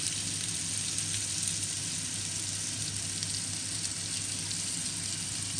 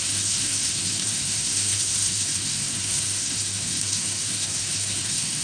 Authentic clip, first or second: first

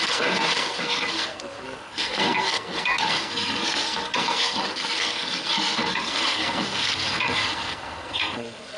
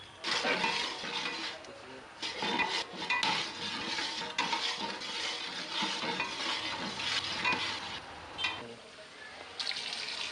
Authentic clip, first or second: second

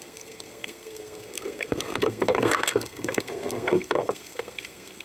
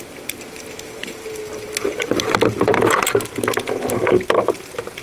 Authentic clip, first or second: second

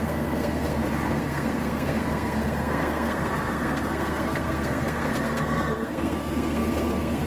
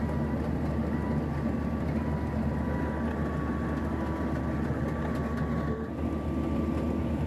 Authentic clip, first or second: second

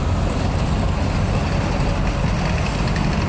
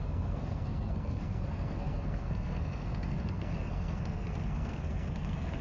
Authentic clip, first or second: first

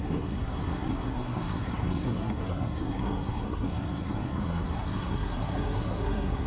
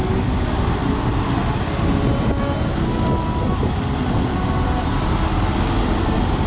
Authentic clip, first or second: second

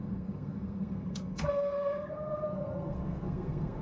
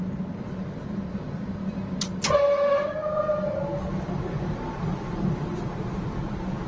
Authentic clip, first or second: second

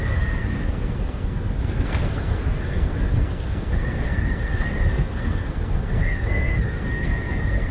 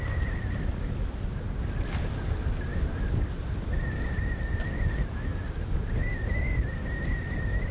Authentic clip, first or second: second